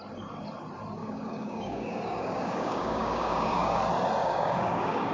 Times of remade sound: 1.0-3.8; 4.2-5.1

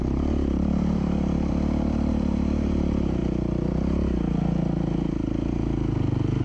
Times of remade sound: 0.0-1.5; 2.1-3.2

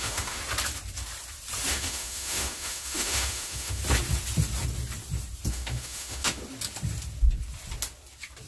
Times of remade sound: 0.0-0.4; 1.7-3.8; 5.5-6.4

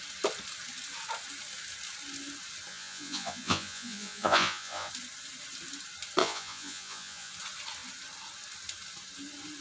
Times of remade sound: 2.7-4.9; 6.2-7.3